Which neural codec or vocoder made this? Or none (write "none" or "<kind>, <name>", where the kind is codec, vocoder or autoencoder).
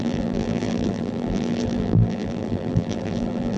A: vocoder, BigVGAN v2